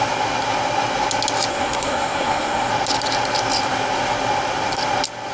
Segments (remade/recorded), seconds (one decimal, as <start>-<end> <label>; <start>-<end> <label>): 0.0-1.5 recorded; 1.5-2.7 remade; 2.7-5.3 recorded